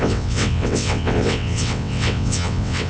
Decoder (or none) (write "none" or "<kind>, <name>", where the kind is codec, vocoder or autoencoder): vocoder, WaveNeXt